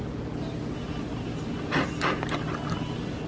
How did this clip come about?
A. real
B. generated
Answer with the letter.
A